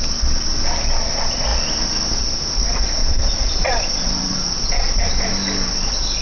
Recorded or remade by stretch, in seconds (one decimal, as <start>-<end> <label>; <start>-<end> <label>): 0.0-3.0 recorded; 3.0-5.1 remade; 5.1-6.2 recorded